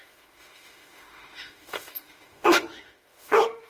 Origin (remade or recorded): remade